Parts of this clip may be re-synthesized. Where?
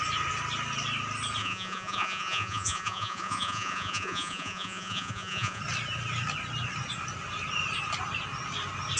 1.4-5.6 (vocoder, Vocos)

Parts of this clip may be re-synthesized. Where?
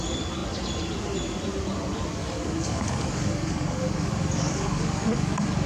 2.2-5.7 (codec, DAC)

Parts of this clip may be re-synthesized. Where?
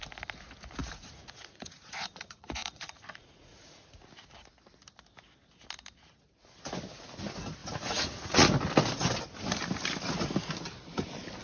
0.8-3.9 (vocoder, Vocos); 7.6-8.5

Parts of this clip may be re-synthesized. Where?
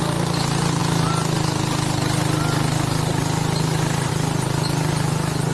none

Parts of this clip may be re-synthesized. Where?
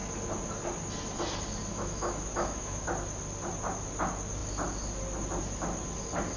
1.7-2.9 (autoencoder, DAC-VAE)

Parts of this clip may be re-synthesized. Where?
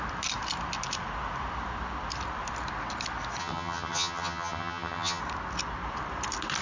3.4-5.2 (vocoder, HiFi-GAN)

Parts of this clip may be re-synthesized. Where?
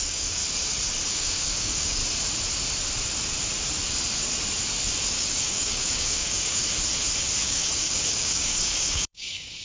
0.0-0.4 (codec, DAC); 1.1-2.0; 5.1-6.6; 7.4-9.6